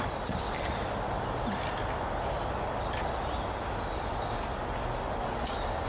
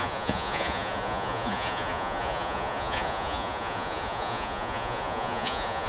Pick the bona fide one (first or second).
first